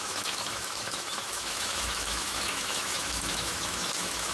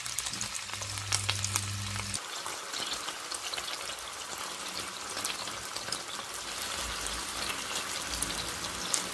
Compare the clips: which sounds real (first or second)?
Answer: second